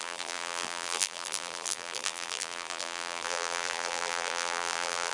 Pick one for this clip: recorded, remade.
remade